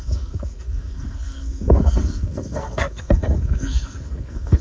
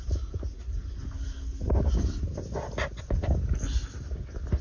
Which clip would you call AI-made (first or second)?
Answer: first